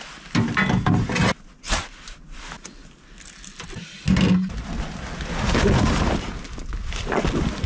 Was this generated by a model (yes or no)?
no